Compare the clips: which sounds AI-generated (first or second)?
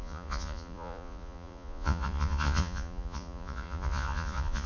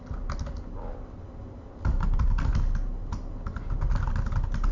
first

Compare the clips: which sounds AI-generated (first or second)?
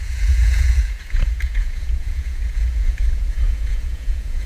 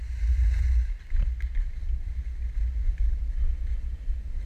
first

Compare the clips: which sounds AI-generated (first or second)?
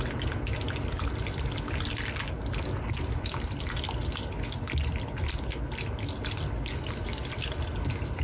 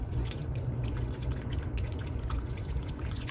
second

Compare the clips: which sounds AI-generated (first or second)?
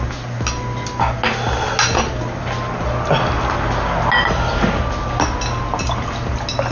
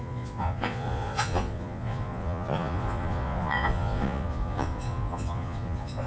second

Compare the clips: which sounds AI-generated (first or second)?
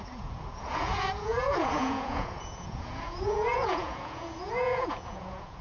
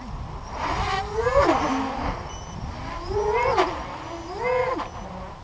first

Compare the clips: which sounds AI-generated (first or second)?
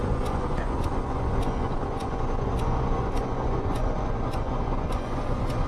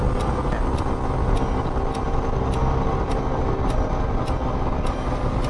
first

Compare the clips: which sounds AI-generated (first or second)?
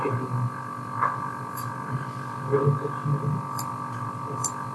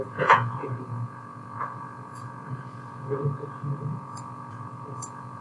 second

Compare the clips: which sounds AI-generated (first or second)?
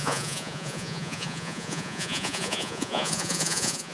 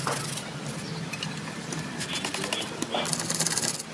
first